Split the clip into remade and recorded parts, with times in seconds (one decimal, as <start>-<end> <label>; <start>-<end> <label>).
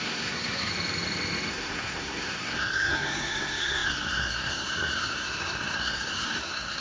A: 0.0-0.7 remade; 0.7-1.5 recorded; 1.5-6.8 remade